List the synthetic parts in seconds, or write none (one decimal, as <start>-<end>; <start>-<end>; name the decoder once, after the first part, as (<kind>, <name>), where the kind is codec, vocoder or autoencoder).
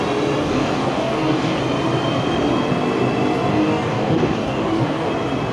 0.4-1.6 (codec, DAC); 3.5-5.1